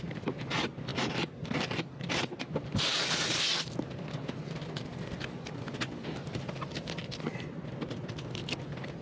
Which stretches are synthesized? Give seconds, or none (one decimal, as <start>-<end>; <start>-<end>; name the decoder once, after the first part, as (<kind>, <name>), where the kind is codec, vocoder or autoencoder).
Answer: 0.9-2.4 (vocoder, BigVGAN v2)